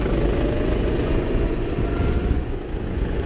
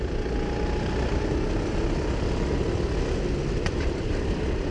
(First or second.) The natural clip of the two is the second